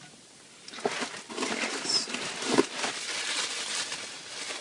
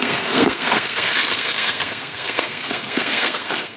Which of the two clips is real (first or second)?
first